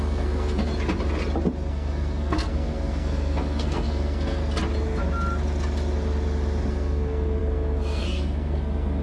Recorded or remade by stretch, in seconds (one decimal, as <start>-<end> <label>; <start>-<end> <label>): 0.0-0.7 remade; 0.7-1.7 recorded; 1.7-4.4 remade; 4.4-6.7 recorded; 6.7-9.0 remade